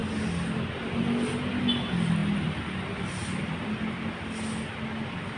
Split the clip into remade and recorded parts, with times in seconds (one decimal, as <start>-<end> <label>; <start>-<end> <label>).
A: 0.0-5.4 recorded